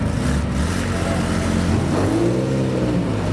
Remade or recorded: recorded